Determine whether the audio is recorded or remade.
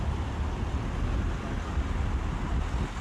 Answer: recorded